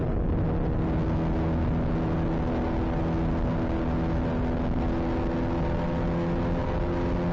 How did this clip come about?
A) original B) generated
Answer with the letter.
A